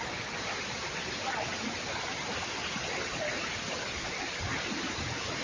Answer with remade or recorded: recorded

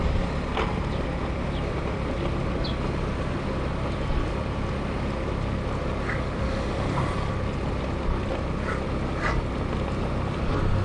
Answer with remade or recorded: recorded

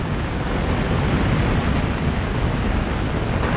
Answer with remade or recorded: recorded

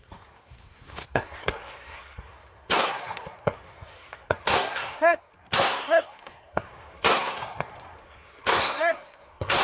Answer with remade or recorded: remade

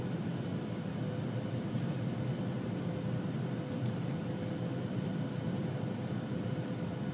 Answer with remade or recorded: recorded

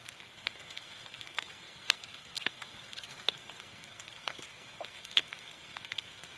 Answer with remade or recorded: remade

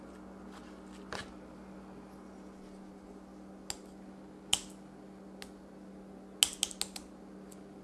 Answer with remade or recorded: recorded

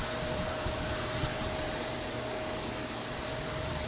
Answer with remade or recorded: remade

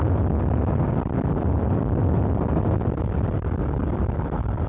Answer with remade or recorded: recorded